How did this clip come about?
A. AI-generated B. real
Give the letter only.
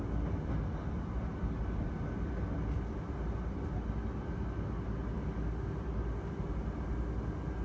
B